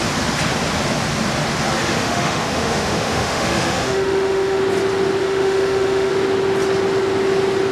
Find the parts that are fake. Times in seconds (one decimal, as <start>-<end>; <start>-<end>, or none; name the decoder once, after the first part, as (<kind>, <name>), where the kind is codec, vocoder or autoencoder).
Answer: 1.8-4.6 (autoencoder, DAC-VAE); 5.2-6.1